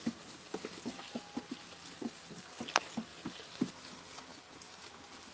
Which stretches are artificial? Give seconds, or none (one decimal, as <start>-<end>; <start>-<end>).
0.0-2.3; 3.1-3.8